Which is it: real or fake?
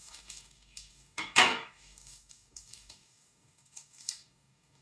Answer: fake